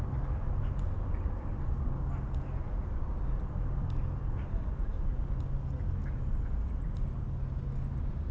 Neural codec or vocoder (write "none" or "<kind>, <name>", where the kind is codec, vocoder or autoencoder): none